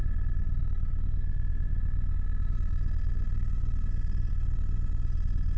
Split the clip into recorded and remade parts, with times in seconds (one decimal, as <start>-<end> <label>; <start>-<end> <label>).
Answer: 0.0-5.6 recorded